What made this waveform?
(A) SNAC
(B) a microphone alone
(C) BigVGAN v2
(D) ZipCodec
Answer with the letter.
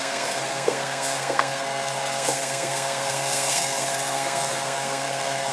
A